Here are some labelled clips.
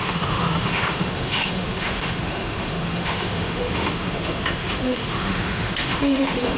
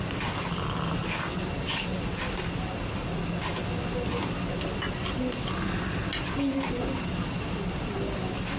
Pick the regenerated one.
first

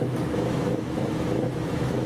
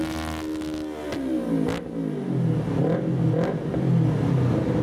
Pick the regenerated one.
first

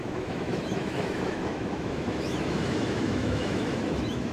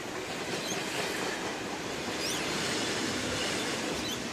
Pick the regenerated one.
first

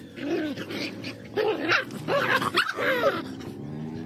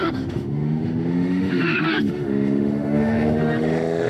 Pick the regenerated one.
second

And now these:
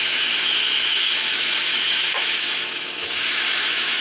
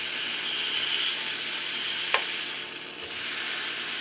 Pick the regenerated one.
first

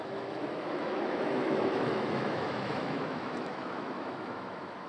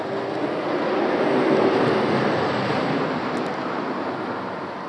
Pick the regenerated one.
first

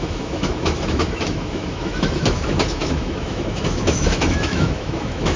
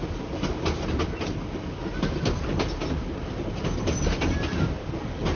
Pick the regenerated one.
first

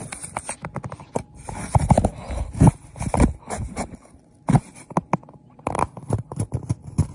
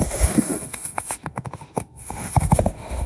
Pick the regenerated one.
second